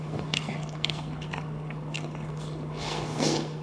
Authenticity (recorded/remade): remade